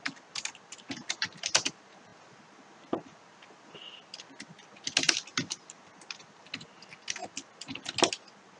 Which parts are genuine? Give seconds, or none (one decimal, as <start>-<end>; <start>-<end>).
0.0-1.0; 1.7-8.6